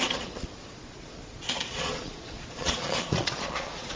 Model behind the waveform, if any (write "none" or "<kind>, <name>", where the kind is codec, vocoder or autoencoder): vocoder, Vocos